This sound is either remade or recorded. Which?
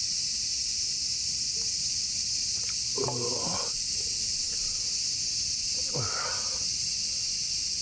recorded